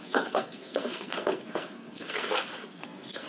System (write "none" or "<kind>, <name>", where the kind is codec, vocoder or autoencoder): codec, SNAC